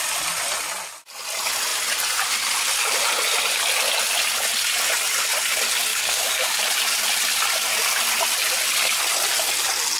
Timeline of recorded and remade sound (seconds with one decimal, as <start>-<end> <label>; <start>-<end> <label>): 0.0-5.9 recorded; 5.9-6.6 remade; 6.6-10.0 recorded